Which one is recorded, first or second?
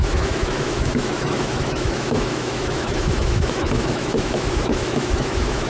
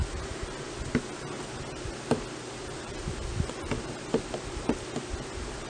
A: second